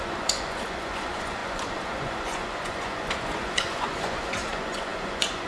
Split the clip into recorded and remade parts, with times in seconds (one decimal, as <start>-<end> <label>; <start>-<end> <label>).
0.0-5.5 remade